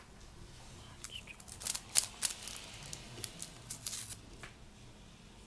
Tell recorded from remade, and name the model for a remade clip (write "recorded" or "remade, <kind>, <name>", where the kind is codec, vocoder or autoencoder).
recorded